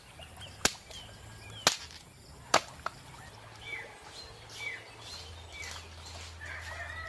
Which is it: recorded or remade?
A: recorded